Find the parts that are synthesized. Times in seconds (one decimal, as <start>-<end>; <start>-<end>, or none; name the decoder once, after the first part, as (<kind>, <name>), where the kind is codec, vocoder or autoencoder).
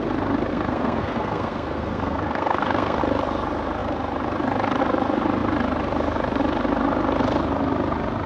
0.5-3.0 (codec, SNAC)